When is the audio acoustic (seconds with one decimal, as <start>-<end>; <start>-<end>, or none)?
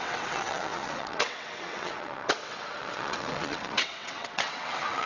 none